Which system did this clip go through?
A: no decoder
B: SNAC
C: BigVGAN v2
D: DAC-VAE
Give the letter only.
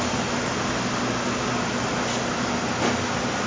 A